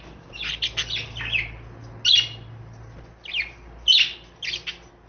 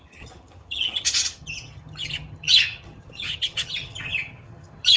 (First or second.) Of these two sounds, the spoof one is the second